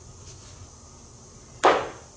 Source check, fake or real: real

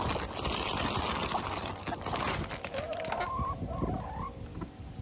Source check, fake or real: real